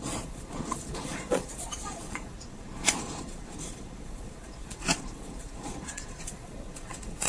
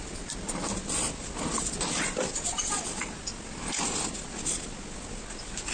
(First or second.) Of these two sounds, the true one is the second